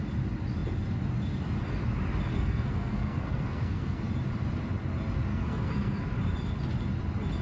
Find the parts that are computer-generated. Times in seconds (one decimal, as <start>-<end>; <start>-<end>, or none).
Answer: 2.3-4.1; 5.3-6.0